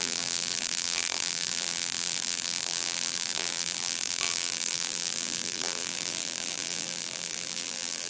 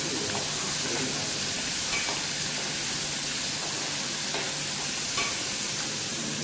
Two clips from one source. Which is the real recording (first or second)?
second